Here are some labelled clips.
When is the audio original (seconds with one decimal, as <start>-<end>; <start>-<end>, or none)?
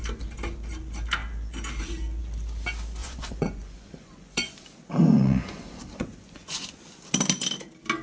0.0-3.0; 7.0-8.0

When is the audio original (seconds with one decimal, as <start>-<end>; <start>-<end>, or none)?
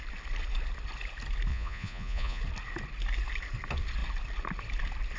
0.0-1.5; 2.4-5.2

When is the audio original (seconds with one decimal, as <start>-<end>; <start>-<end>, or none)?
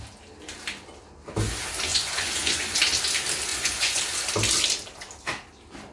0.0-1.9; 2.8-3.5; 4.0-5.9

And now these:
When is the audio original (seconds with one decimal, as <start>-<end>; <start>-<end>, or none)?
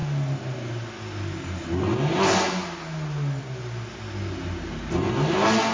0.0-5.7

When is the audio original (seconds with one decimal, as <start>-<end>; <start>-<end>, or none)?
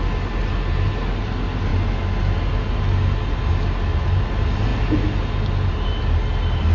0.0-6.7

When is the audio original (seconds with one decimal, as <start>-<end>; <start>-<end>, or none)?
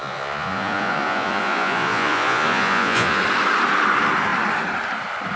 3.2-5.4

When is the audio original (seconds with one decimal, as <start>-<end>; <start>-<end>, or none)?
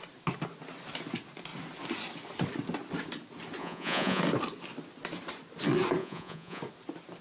0.0-3.6; 4.2-6.0; 6.6-7.2